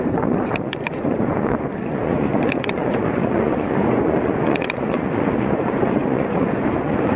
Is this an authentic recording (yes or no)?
no